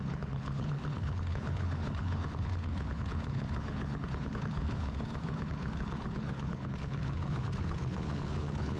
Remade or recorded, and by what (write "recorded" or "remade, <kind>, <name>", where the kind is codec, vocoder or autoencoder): remade, codec, HILCodec